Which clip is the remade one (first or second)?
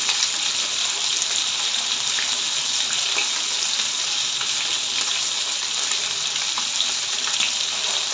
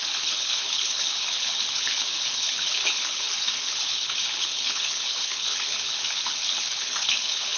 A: second